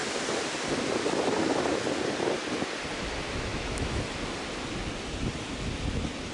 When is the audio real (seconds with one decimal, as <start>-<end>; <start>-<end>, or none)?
0.0-3.5; 4.1-6.3